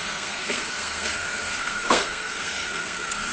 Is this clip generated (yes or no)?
yes